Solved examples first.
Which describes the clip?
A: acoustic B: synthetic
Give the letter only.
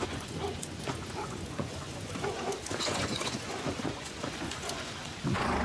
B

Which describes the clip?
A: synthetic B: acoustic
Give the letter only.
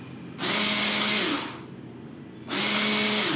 B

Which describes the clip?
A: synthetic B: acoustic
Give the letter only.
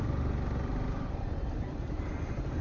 B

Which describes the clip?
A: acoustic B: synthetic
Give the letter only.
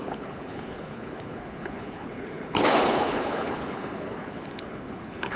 B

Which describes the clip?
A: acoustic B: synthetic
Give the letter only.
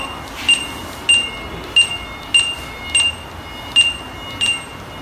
A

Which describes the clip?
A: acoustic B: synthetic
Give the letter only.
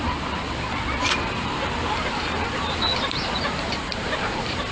B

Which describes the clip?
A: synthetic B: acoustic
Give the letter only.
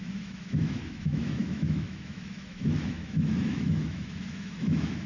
A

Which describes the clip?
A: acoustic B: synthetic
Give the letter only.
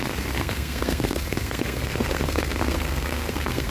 B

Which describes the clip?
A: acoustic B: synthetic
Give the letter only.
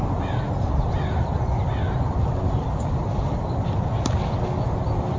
A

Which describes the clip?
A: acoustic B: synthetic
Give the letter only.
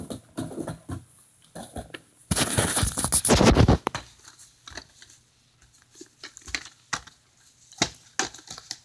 A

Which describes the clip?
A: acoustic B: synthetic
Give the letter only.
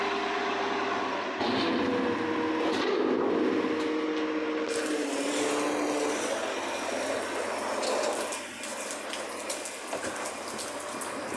A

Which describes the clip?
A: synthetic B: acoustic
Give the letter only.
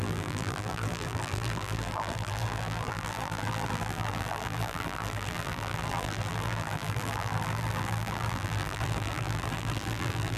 A